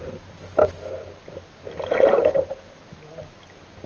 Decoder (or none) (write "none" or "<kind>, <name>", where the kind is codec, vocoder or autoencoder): none